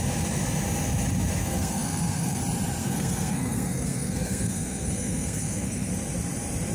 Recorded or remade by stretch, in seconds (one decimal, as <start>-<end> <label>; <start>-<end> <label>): 0.0-1.4 recorded; 1.4-2.4 remade; 2.4-2.8 recorded; 2.8-5.9 remade; 5.9-6.7 recorded